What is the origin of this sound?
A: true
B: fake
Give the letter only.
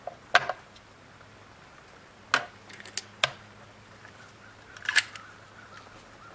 A